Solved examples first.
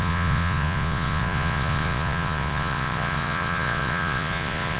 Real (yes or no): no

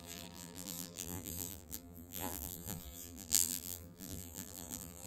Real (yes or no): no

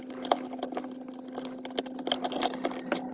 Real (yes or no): yes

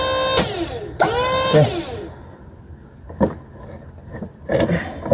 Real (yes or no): yes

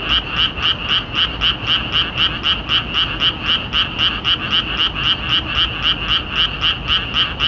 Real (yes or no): yes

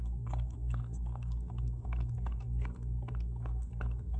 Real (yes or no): no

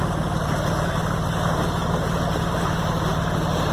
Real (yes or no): yes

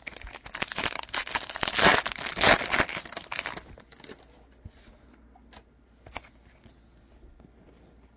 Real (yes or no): yes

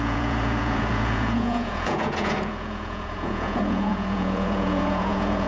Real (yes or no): no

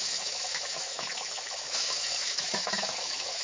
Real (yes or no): no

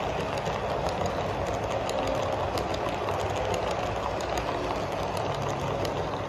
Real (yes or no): yes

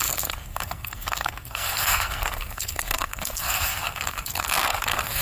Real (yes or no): no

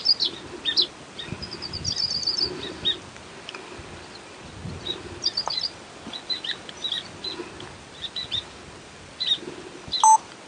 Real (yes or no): yes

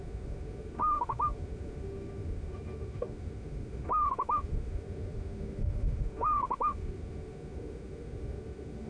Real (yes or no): no